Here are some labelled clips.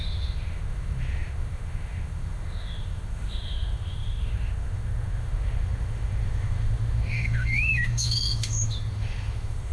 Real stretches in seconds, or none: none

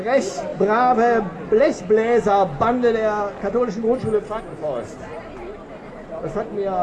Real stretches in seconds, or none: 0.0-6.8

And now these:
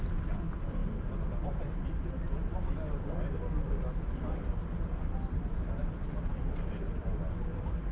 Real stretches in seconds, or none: 0.0-7.9

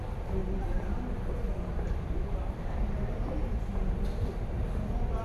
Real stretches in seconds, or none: 0.0-0.4; 3.5-5.2